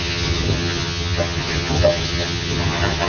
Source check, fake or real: fake